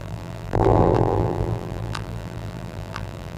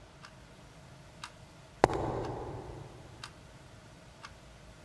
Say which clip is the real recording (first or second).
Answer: second